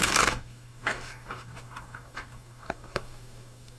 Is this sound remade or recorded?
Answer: remade